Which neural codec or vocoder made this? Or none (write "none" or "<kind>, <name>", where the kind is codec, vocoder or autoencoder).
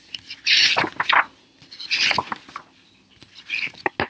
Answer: none